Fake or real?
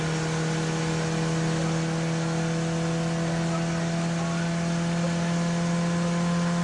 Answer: real